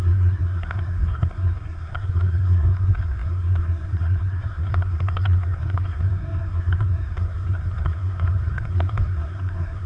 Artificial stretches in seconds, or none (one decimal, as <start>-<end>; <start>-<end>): 0.0-9.9